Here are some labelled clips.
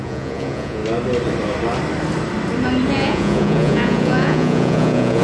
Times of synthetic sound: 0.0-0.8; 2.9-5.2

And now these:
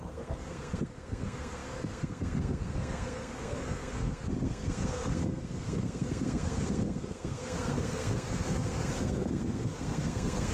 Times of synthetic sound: 0.0-10.5

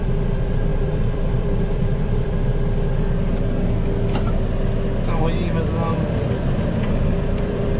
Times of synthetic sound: 0.0-2.5; 7.2-7.8